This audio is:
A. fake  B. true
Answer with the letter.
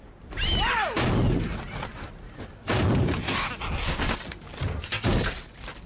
B